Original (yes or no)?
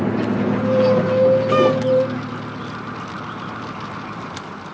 yes